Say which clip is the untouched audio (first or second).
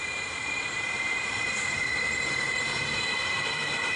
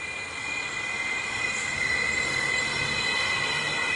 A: second